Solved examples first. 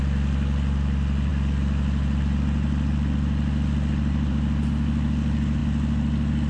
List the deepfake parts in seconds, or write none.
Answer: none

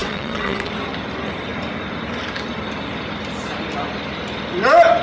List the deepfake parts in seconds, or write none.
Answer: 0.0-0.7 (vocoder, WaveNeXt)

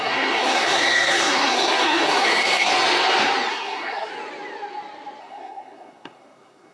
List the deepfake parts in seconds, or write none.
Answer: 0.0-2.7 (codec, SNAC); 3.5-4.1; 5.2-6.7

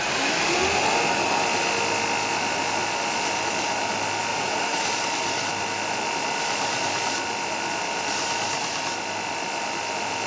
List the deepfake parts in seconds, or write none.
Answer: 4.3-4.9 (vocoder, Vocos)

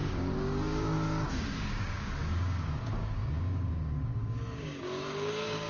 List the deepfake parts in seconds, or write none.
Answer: 0.0-5.7 (codec, DAC)

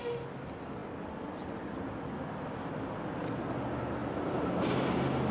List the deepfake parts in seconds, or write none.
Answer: none

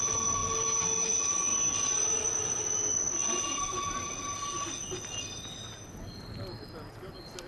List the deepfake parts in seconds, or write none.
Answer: none

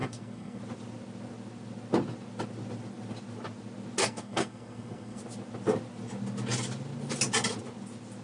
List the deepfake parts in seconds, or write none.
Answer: 0.0-0.6 (codec, SNAC); 4.0-5.2